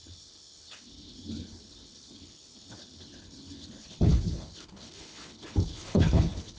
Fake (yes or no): yes